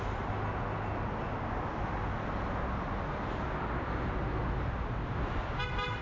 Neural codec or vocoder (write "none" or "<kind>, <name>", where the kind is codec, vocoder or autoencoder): none